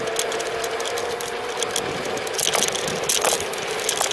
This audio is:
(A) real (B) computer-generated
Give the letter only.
A